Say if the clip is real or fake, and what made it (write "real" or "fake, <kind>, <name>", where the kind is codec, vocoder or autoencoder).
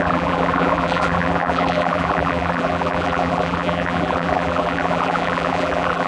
fake, vocoder, BigVGAN v2